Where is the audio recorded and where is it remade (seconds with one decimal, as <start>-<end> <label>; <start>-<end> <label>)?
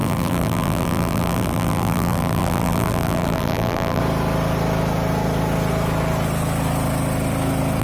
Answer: 0.0-4.0 remade; 4.0-7.8 recorded